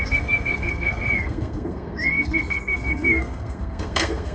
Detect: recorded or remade remade